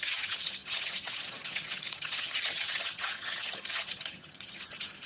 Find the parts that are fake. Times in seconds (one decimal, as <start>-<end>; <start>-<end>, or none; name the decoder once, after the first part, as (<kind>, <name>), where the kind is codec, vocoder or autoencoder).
0.0-5.1 (vocoder, HiFi-GAN)